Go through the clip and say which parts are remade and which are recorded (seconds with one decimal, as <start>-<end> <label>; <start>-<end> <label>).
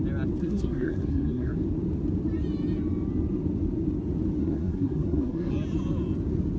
0.0-0.4 recorded; 0.4-1.5 remade; 1.5-4.4 recorded; 4.4-5.5 remade; 5.5-6.6 recorded